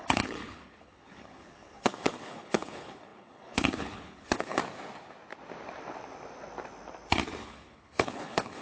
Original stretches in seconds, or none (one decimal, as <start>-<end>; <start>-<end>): 4.6-7.4